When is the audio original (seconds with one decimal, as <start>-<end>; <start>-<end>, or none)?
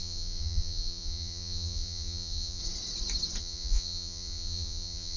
2.6-3.4